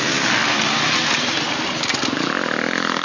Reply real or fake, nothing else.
real